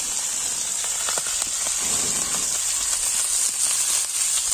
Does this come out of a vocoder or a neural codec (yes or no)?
no